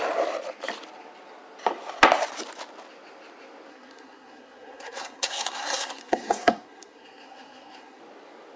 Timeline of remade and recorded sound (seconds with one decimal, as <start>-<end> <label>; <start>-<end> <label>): 0.0-3.7 recorded; 3.7-8.0 remade; 8.0-8.6 recorded

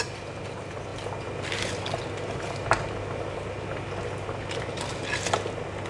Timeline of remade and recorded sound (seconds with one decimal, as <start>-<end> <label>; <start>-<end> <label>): 0.0-5.9 recorded

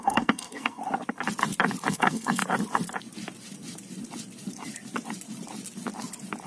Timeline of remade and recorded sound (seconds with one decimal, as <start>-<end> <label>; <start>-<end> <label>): 0.0-0.8 remade; 0.8-1.9 recorded; 1.9-2.4 remade; 2.4-6.5 recorded

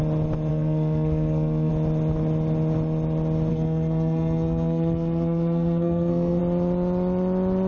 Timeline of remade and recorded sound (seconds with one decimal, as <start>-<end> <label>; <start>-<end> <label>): 0.0-0.5 recorded; 0.5-1.7 remade; 1.7-3.5 recorded; 3.5-6.4 remade; 6.4-7.7 recorded

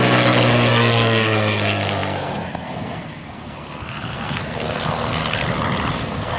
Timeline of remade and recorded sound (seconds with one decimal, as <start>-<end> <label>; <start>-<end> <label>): 0.0-5.2 remade; 5.2-5.9 recorded; 5.9-6.4 remade

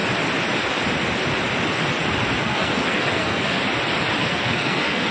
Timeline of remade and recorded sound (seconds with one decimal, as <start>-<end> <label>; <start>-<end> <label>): 0.0-2.4 recorded; 2.4-3.6 remade; 3.6-4.2 recorded; 4.2-5.1 remade

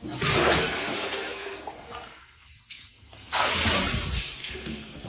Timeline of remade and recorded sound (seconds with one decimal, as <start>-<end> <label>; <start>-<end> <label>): 0.0-0.4 recorded; 0.4-3.5 remade; 3.5-4.4 recorded; 4.4-5.1 remade